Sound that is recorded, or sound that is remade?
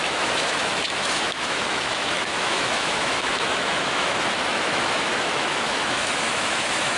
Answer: remade